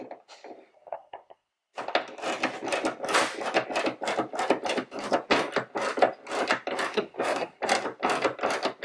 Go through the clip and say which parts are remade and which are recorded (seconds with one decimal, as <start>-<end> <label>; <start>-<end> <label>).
0.0-0.7 recorded; 0.7-1.5 remade; 1.5-6.9 recorded; 6.9-7.6 remade; 7.6-8.8 recorded